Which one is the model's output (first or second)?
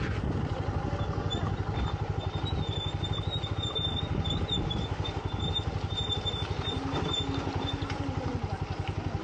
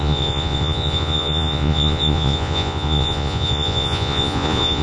second